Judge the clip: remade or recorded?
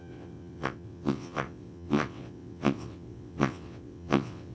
remade